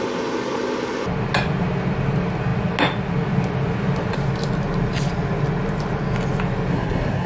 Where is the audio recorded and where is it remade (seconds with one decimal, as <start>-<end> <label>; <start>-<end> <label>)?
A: 0.0-6.7 recorded; 6.7-7.3 remade